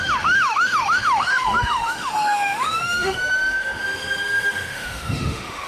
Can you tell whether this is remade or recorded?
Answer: remade